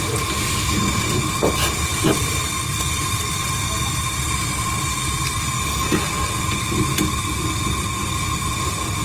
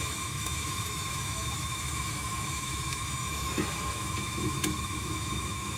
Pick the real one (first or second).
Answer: first